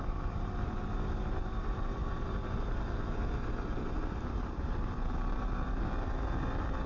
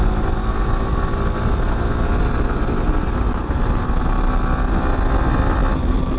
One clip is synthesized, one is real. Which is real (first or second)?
second